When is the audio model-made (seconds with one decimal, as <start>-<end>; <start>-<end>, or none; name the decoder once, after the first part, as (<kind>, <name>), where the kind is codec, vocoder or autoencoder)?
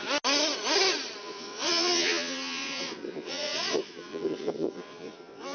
1.2-5.5 (vocoder, Vocos)